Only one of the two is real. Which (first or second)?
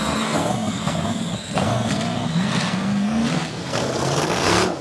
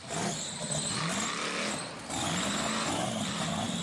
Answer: second